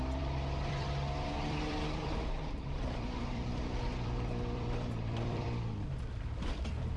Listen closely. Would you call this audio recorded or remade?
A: remade